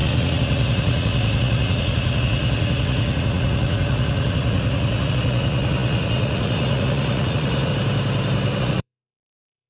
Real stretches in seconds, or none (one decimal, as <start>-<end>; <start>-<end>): 7.7-8.6